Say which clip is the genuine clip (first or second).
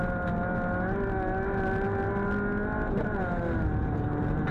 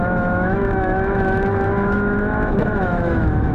first